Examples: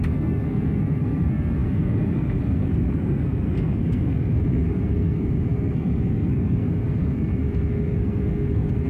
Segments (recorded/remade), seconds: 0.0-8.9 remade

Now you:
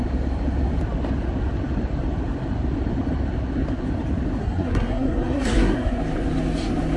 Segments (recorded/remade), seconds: 0.0-4.4 recorded; 4.4-6.0 remade; 6.0-7.0 recorded

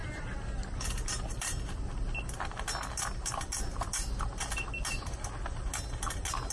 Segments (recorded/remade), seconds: 0.0-6.5 recorded

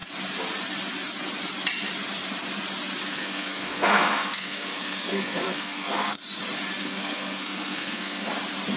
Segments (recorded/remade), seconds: 0.0-3.1 recorded; 3.1-6.2 remade; 6.2-6.8 recorded; 6.8-8.3 remade; 8.3-8.8 recorded

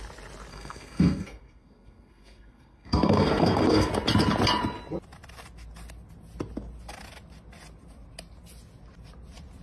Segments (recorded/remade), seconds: 0.0-0.5 recorded; 0.5-3.9 remade; 3.9-9.6 recorded